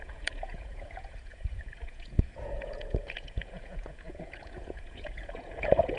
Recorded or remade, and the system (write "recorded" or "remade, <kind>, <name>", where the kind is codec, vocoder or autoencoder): remade, vocoder, Vocos